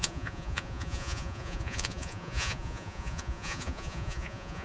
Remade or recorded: remade